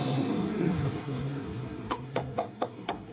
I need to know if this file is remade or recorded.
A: remade